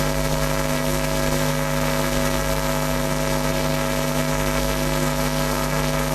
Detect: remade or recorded remade